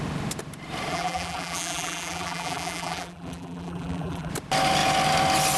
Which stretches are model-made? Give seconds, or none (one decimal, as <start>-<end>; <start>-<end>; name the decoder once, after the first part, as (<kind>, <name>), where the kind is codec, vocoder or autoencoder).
0.9-4.3 (vocoder, BigVGAN v2)